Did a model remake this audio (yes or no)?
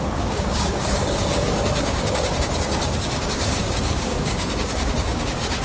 yes